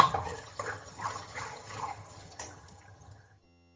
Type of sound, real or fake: fake